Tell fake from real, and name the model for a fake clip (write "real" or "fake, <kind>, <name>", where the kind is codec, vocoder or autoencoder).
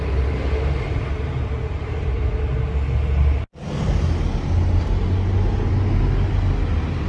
real